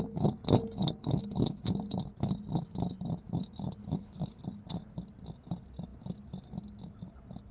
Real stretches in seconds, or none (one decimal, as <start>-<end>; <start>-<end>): 0.0-1.0; 1.7-3.8; 4.4-7.5